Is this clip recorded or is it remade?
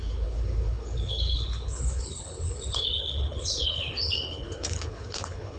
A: remade